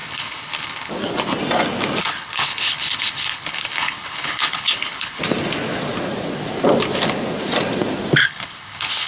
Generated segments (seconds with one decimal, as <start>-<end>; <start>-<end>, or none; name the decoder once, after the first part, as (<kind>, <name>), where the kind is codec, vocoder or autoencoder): 0.0-0.9 (codec, HILCodec); 2.0-5.2; 8.2-9.1